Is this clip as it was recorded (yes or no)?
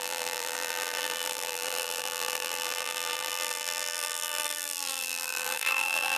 no